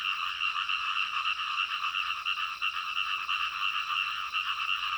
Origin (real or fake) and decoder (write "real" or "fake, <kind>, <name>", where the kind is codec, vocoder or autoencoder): real